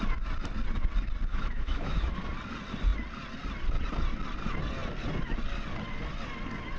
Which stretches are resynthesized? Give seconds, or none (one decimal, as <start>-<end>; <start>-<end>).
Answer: 1.3-2.2